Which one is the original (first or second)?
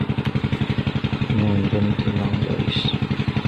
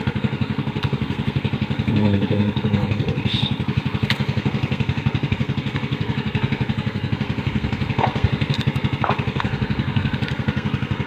first